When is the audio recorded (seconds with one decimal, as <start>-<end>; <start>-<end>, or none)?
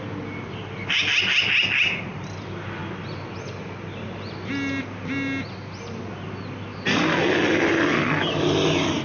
0.0-9.0